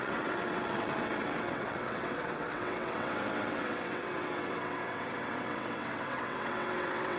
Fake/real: fake